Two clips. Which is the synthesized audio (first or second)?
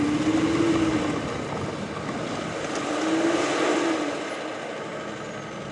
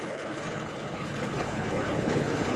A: second